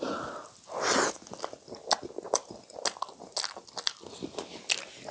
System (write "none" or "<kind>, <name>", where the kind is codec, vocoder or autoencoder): none